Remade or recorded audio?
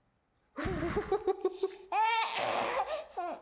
recorded